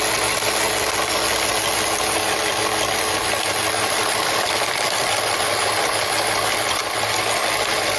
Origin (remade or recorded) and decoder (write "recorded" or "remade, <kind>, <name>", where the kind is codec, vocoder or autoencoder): recorded